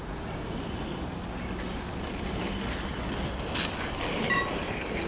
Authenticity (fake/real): real